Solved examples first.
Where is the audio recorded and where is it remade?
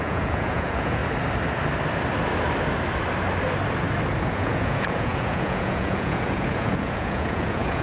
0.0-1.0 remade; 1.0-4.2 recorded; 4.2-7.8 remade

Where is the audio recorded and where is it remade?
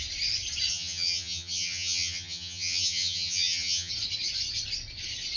0.0-0.7 recorded; 0.7-3.9 remade; 3.9-5.4 recorded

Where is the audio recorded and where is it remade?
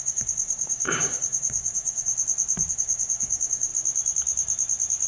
0.0-2.1 remade; 2.1-2.7 recorded; 2.7-3.7 remade; 3.7-5.1 recorded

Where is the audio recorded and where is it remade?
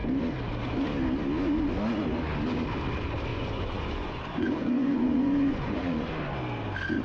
0.0-3.3 recorded; 3.3-6.1 remade; 6.1-7.0 recorded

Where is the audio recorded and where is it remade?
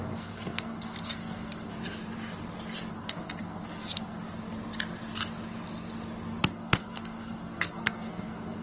0.0-1.7 remade; 1.7-2.9 recorded; 2.9-4.2 remade; 4.2-6.4 recorded; 6.4-8.6 remade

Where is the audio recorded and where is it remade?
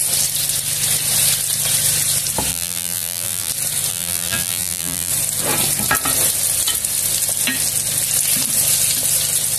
0.0-2.5 recorded; 2.5-3.5 remade; 3.5-3.9 recorded; 3.9-5.1 remade; 5.1-9.6 recorded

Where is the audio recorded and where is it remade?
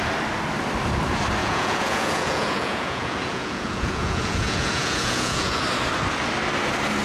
0.0-1.4 recorded; 1.4-5.6 remade; 5.6-7.0 recorded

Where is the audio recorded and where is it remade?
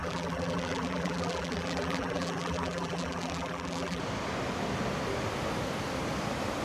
0.0-4.0 remade; 4.0-6.6 recorded